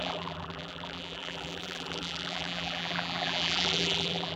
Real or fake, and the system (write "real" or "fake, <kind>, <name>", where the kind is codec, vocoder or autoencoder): fake, vocoder, BigVGAN v2